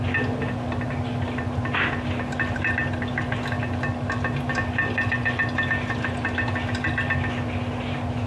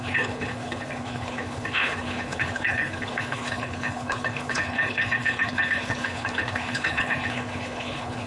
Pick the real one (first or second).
first